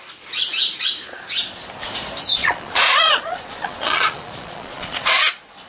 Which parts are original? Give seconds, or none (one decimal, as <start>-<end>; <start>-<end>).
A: 0.0-2.3